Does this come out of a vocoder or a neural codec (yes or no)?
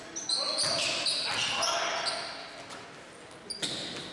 no